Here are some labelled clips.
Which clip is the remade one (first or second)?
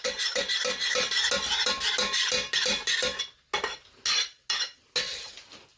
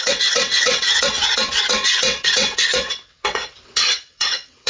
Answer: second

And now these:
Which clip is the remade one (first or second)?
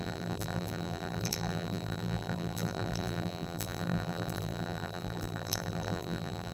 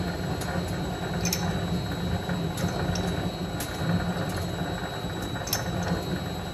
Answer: first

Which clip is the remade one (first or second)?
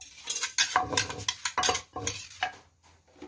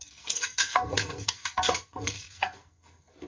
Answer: second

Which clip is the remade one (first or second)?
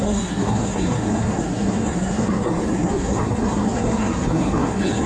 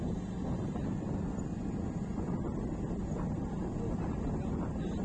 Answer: first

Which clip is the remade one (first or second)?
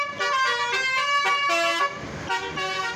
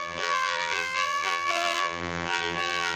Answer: second